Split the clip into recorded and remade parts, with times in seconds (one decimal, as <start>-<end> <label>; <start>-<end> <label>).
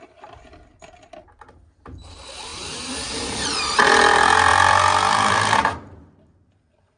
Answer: 0.0-2.5 recorded; 2.5-3.6 remade; 3.6-4.5 recorded; 4.5-6.5 remade; 6.5-7.0 recorded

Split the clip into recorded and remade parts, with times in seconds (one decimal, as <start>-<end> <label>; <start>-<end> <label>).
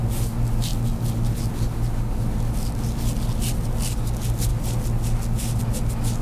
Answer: 0.0-6.2 recorded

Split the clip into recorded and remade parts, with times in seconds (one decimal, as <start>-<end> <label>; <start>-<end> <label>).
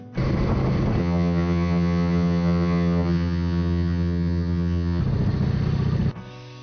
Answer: 0.0-1.0 recorded; 1.0-5.0 remade; 5.0-6.6 recorded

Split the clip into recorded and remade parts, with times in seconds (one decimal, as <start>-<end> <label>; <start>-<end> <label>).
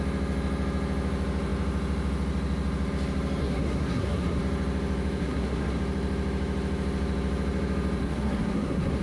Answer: 0.0-3.4 recorded; 3.4-4.4 remade; 4.4-5.2 recorded; 5.2-5.8 remade; 5.8-8.0 recorded; 8.0-9.0 remade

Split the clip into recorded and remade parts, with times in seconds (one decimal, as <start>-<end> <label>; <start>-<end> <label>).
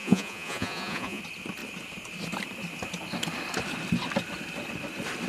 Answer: 0.0-1.2 remade; 1.2-5.3 recorded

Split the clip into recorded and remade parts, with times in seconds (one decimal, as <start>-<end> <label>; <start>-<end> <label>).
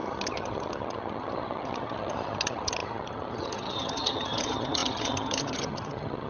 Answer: 0.0-6.3 remade